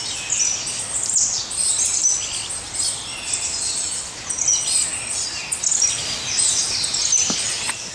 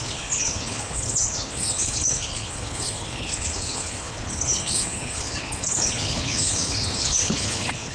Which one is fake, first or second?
second